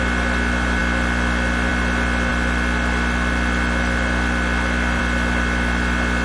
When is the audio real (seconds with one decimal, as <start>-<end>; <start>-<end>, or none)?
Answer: 0.0-6.2